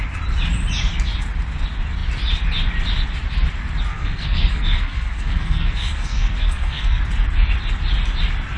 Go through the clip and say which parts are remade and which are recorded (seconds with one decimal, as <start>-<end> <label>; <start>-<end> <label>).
0.0-3.9 recorded; 3.9-7.0 remade; 7.0-8.6 recorded